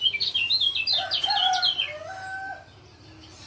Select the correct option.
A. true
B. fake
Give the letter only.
A